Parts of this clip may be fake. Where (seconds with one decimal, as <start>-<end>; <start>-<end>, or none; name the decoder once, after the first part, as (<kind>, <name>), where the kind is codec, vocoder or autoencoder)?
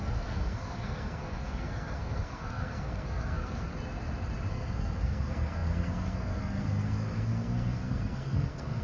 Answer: 0.0-3.7 (codec, SNAC); 4.5-8.8